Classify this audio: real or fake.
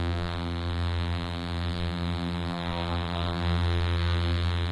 fake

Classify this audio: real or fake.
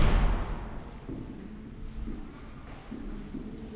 real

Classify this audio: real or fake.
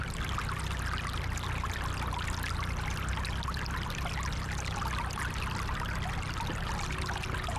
real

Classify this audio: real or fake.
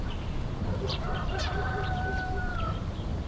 fake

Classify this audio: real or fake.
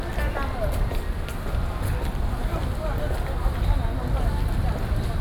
real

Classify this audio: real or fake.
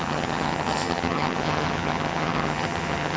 fake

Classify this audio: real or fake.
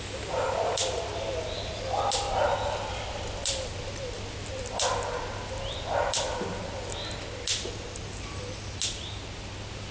real